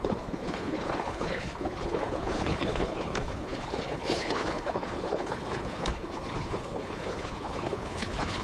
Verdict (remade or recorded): remade